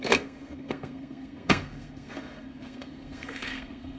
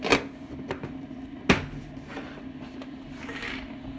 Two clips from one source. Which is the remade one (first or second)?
first